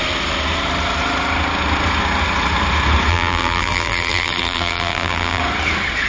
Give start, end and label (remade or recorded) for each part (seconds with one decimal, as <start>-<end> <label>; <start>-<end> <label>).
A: 0.0-3.1 recorded; 3.1-5.4 remade; 5.4-6.1 recorded